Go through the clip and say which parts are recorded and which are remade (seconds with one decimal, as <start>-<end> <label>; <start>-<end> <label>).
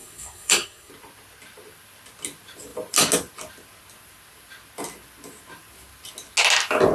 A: 0.0-0.9 remade; 0.9-6.9 recorded